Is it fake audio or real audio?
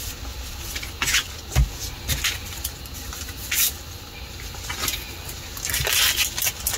real